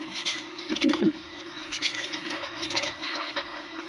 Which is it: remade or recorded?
remade